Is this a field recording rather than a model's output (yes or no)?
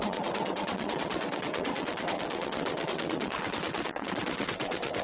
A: no